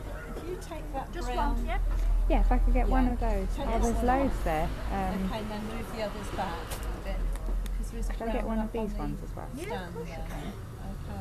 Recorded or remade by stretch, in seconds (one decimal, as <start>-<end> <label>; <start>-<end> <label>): 0.0-11.2 recorded